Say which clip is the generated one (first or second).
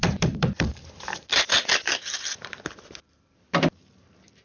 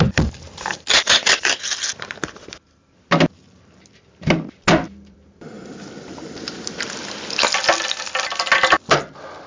first